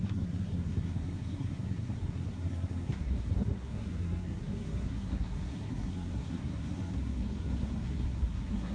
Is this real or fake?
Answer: fake